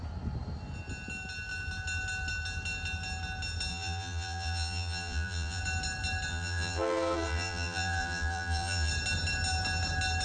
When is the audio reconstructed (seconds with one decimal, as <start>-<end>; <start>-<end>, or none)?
3.7-5.6; 6.3-8.9